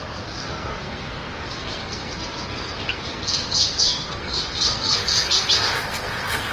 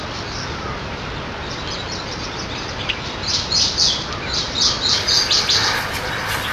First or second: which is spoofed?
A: first